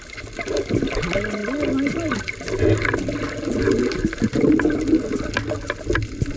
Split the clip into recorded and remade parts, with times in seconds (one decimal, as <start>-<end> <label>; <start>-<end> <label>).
0.0-6.4 recorded

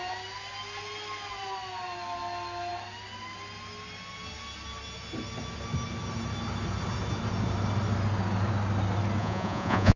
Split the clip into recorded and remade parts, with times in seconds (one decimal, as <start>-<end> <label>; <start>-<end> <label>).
0.0-9.2 recorded; 9.2-10.0 remade

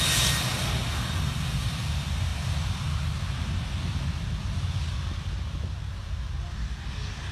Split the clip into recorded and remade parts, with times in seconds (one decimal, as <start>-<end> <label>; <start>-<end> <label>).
0.0-7.3 recorded